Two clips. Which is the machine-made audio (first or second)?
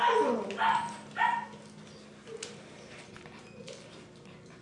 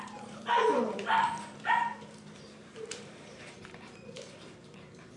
second